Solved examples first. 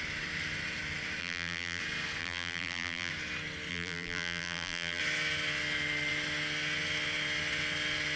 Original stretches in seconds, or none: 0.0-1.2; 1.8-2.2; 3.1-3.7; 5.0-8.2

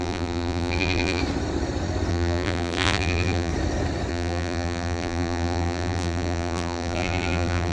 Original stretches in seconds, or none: 1.2-2.1; 3.5-4.1